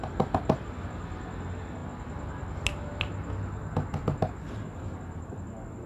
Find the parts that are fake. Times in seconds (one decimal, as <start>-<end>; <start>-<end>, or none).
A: none